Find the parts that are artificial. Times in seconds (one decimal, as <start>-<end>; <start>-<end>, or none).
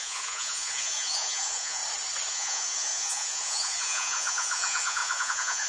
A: 0.0-1.8; 2.3-5.7